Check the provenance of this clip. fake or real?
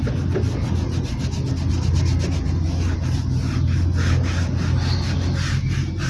real